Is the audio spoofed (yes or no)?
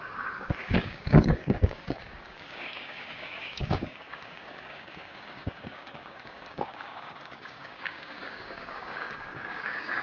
yes